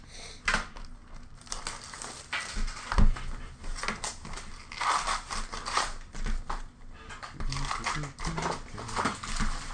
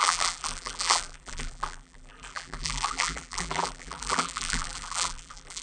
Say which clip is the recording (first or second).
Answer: first